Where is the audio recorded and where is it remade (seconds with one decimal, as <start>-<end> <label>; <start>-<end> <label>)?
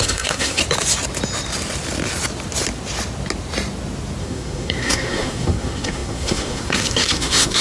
0.0-0.6 remade; 0.6-4.2 recorded; 4.2-7.6 remade